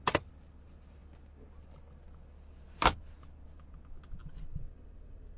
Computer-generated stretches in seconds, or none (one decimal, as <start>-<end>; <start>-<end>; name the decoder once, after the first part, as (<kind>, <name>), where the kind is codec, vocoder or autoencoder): none

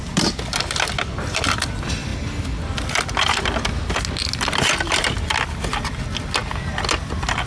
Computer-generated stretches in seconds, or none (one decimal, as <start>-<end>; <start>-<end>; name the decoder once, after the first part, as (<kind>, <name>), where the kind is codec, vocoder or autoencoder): none

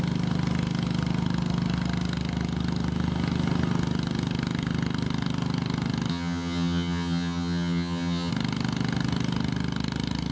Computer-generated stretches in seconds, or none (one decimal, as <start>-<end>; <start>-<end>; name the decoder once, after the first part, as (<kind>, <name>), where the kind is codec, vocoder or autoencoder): 6.1-8.3 (vocoder, HiFi-GAN)

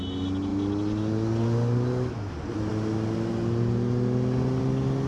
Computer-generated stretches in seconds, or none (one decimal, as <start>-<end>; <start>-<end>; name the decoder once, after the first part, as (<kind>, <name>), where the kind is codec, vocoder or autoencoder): none

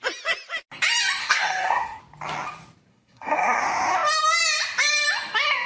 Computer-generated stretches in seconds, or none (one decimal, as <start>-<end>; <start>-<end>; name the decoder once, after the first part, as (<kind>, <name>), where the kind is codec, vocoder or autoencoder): 1.2-2.0 (codec, SNAC); 2.9-3.6

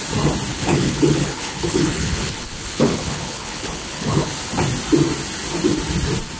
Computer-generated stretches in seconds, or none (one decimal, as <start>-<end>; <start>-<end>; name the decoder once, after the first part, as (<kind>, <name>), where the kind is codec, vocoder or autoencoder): 0.5-4.3 (codec, HILCodec)